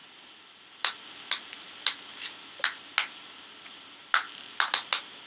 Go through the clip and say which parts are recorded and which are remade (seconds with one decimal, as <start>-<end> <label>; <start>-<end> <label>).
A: 0.0-5.3 recorded